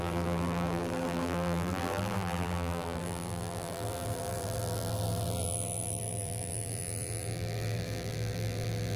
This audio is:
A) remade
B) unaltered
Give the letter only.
A